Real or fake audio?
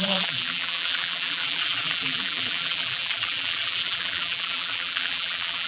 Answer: fake